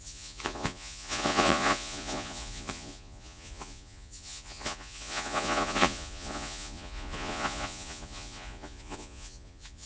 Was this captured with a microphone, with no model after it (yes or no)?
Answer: no